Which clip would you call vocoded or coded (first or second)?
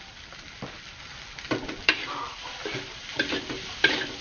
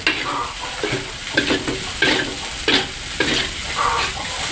first